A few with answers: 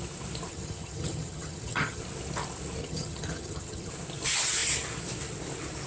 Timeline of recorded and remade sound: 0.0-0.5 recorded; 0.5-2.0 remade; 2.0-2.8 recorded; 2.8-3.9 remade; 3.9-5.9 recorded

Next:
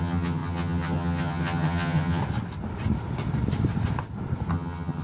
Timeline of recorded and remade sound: 0.0-2.2 remade; 2.2-4.5 recorded; 4.5-5.0 remade

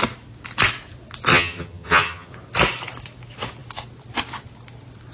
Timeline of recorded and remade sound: 0.0-1.3 recorded; 1.3-2.3 remade; 2.3-5.1 recorded

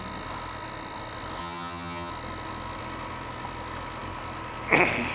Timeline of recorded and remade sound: 0.0-1.4 recorded; 1.4-2.1 remade; 2.1-5.1 recorded

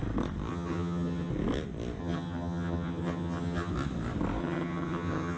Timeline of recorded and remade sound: 0.0-0.5 recorded; 0.5-1.3 remade; 1.3-2.0 recorded; 2.0-3.7 remade; 3.7-4.4 recorded; 4.4-5.4 remade

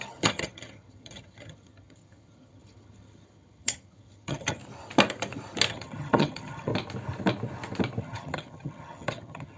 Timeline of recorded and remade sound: 0.0-4.6 remade; 4.6-5.7 recorded; 5.7-6.7 remade; 6.7-8.0 recorded; 8.0-9.6 remade

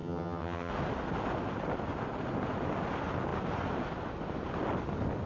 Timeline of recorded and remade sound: 0.0-0.7 remade; 0.7-5.3 recorded